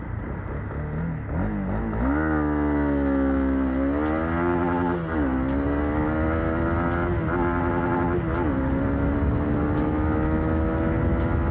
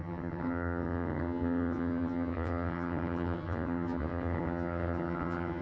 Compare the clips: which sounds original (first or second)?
first